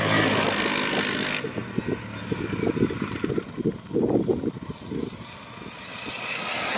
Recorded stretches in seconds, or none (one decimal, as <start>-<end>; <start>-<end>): 0.0-6.8